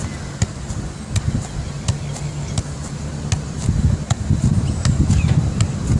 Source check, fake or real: real